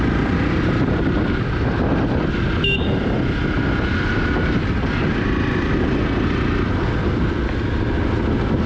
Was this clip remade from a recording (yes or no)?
no